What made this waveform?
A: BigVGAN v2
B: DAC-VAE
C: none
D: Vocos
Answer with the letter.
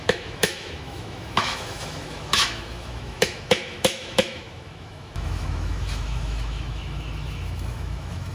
B